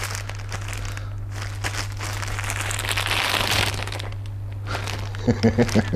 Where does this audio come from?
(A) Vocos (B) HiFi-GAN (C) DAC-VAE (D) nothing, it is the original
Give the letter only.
D